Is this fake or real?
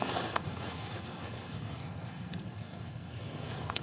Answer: fake